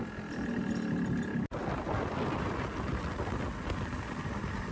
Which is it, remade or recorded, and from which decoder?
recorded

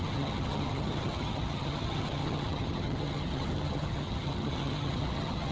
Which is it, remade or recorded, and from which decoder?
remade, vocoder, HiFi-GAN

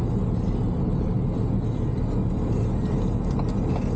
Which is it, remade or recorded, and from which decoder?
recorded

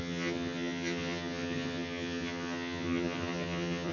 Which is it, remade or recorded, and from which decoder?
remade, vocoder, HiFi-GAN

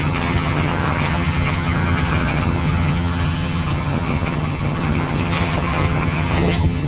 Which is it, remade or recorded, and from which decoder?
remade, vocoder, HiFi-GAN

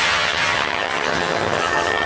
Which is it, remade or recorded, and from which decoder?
remade, vocoder, HiFi-GAN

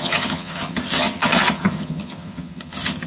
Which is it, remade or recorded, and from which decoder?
remade, vocoder, HiFi-GAN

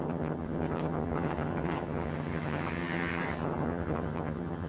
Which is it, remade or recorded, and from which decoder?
remade, vocoder, HiFi-GAN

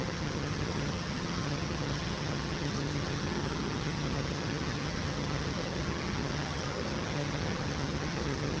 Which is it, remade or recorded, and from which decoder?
remade, vocoder, HiFi-GAN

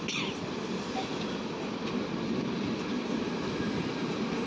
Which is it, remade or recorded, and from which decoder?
recorded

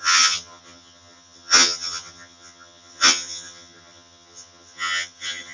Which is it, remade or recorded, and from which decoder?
remade, vocoder, HiFi-GAN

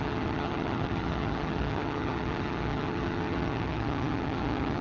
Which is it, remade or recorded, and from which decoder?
remade, vocoder, HiFi-GAN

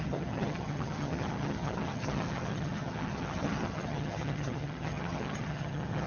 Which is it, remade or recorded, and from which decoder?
remade, vocoder, HiFi-GAN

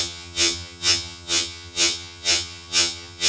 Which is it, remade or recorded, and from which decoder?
remade, vocoder, HiFi-GAN